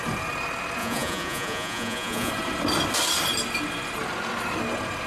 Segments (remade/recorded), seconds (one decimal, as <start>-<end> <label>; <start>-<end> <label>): 0.0-0.8 recorded; 0.8-2.3 remade; 2.3-5.1 recorded